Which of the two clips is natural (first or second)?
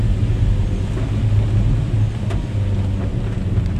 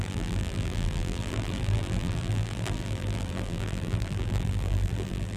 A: first